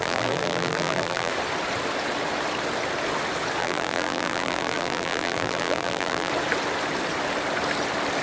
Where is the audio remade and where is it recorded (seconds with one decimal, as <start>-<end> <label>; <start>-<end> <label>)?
0.0-1.3 remade; 1.3-3.6 recorded; 3.6-6.3 remade; 6.3-8.2 recorded